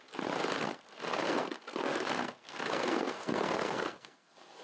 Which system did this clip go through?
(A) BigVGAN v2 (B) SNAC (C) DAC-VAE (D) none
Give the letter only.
B